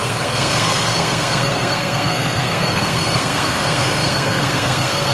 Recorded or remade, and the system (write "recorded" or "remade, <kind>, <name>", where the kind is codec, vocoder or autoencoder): remade, codec, SNAC